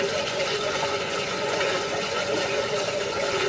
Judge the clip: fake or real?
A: fake